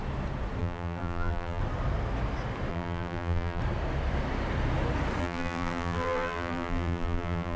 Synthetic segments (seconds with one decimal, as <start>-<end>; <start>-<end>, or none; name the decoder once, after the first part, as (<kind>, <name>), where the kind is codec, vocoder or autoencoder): 0.6-1.6 (vocoder, BigVGAN v2); 2.7-3.6; 5.2-7.6